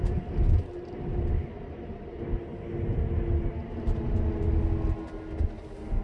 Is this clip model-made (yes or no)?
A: no